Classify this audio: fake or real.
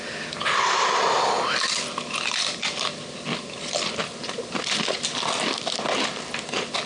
real